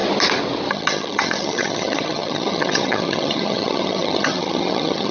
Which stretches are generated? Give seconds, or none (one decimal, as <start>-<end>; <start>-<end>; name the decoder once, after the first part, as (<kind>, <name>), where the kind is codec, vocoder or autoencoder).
0.7-5.1 (vocoder, HiFi-GAN)

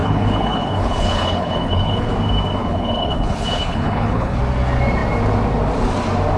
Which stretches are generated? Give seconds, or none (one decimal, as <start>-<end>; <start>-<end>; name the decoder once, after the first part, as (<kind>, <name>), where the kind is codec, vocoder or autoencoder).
0.0-2.1 (codec, HILCodec); 2.6-4.4

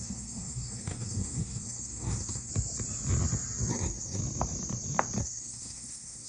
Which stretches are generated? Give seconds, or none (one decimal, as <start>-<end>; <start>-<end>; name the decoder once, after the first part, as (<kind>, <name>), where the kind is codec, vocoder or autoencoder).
0.0-2.5 (codec, SNAC); 3.7-4.2; 5.2-6.3